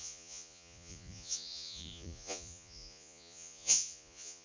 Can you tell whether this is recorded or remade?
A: remade